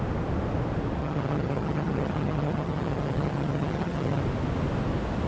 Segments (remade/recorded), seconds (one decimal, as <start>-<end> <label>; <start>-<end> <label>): 0.0-1.0 recorded; 1.0-4.2 remade; 4.2-5.3 recorded